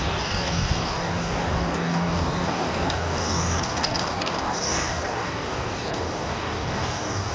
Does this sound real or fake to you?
fake